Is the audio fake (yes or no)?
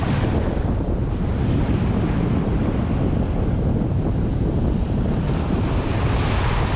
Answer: no